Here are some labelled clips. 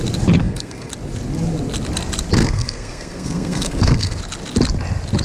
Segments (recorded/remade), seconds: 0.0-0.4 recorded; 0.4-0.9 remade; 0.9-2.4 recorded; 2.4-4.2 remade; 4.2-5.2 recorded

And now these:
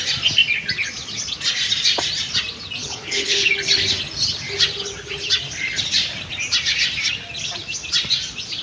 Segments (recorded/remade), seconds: 0.0-2.8 recorded; 2.8-3.5 remade; 3.5-8.6 recorded

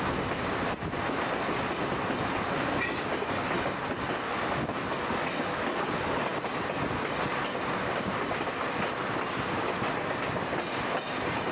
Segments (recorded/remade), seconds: 0.0-11.5 recorded

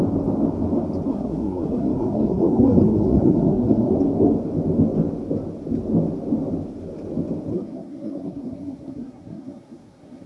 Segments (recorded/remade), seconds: 0.0-1.1 recorded; 1.1-3.9 remade; 3.9-7.5 recorded; 7.5-10.3 remade